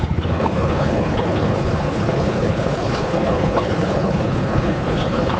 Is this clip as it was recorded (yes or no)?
no